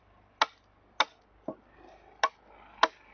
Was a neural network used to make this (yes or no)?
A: no